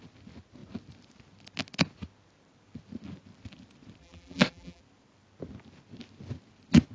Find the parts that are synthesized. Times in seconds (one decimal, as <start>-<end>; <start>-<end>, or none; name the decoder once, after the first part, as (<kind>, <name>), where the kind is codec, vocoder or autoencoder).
4.0-4.8 (vocoder, BigVGAN v2)